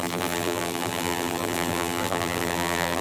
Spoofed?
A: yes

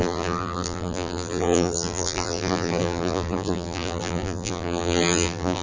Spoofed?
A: yes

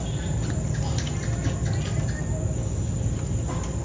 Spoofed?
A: no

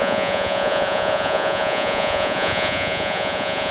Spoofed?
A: yes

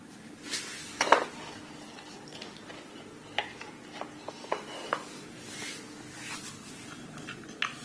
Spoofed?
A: no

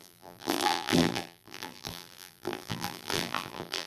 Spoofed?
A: yes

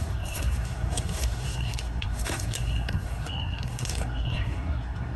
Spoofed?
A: yes